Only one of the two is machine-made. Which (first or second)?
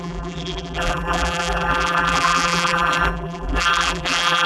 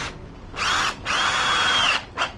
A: first